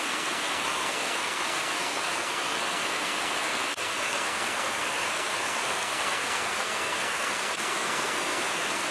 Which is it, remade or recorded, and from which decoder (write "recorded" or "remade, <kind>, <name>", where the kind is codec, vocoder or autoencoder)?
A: remade, codec, SNAC